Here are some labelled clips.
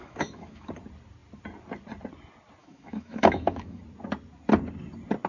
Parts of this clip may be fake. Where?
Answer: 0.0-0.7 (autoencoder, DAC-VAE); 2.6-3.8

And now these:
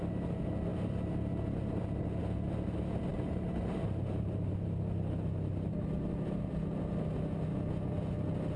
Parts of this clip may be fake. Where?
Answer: 3.1-4.5 (vocoder, BigVGAN v2)